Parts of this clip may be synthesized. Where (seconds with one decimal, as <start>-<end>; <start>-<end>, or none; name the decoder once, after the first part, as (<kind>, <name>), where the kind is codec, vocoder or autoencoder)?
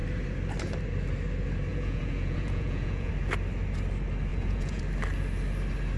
1.7-3.1 (vocoder, Vocos); 4.3-4.8